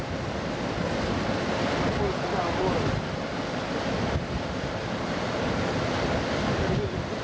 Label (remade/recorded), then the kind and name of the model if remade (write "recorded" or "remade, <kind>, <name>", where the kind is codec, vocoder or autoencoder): remade, vocoder, BigVGAN v2